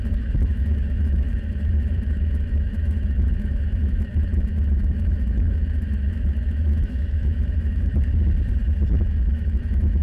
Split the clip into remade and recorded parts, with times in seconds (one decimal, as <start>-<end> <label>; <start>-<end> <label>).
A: 0.0-7.9 remade; 7.9-8.9 recorded; 8.9-10.0 remade